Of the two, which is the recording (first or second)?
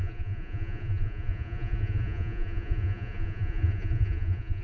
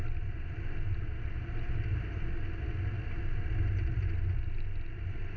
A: second